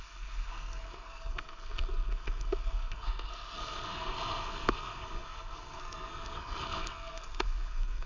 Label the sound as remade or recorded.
remade